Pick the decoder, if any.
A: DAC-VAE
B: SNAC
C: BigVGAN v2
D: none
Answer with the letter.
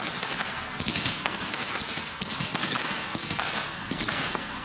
B